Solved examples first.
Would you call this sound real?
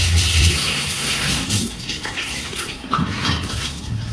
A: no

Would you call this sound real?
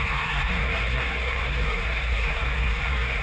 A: no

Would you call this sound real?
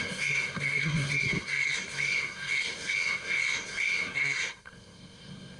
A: no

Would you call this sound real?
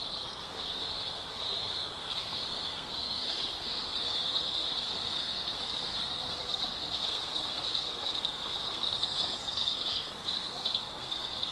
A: no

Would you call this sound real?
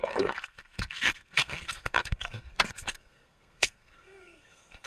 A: no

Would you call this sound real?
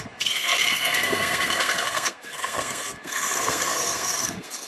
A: no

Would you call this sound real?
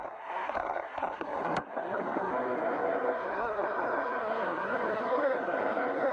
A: no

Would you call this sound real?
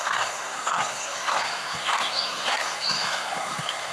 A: no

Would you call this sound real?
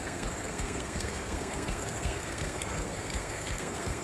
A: no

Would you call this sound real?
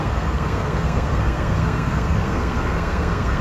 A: no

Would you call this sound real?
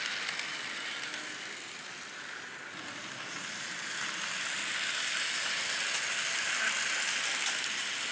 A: yes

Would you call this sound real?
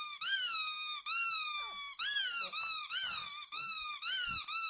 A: yes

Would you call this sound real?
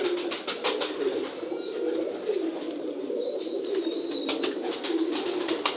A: yes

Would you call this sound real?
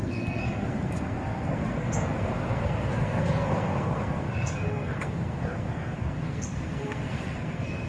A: no